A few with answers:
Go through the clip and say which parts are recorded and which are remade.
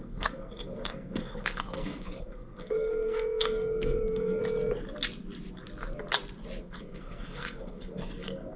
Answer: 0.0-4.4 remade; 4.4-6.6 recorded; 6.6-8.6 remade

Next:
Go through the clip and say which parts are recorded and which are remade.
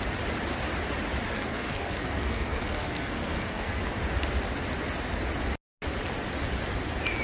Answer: 0.0-1.3 recorded; 1.3-3.8 remade; 3.8-7.2 recorded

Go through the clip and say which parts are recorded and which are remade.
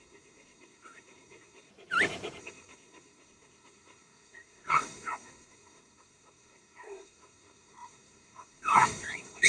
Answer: 0.0-1.7 remade; 1.7-2.4 recorded; 2.4-9.5 remade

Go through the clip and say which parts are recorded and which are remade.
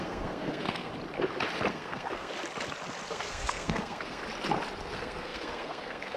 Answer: 0.0-0.9 remade; 0.9-1.7 recorded; 1.7-2.3 remade; 2.3-3.1 recorded; 3.1-4.2 remade; 4.2-4.8 recorded; 4.8-6.2 remade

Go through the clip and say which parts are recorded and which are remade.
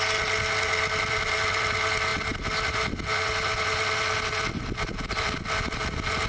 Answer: 0.0-6.3 recorded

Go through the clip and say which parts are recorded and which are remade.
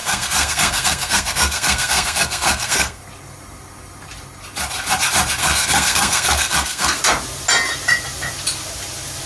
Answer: 0.0-3.0 remade; 3.0-5.4 recorded; 5.4-7.0 remade; 7.0-9.3 recorded